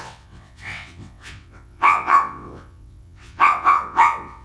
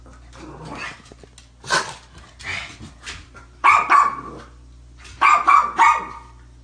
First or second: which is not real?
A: first